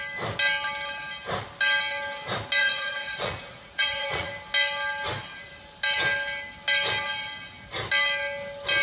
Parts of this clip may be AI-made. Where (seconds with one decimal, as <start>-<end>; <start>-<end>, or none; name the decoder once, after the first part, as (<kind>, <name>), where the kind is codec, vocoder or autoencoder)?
2.6-4.3 (vocoder, Vocos)